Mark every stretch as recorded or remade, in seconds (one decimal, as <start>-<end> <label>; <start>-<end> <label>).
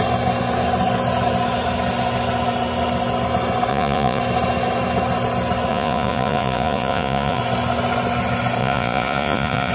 0.0-3.7 recorded; 3.7-4.2 remade; 4.2-5.7 recorded; 5.7-7.4 remade; 7.4-8.6 recorded; 8.6-9.7 remade